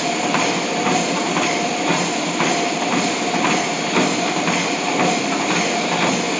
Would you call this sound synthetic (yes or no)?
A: no